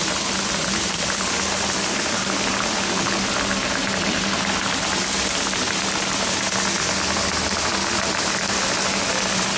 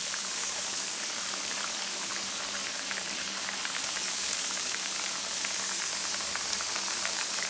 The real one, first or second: first